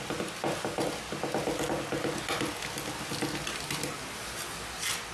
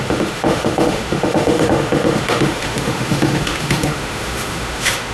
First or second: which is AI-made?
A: second